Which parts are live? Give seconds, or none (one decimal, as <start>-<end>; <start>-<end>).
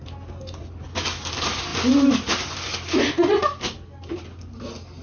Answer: 0.0-5.0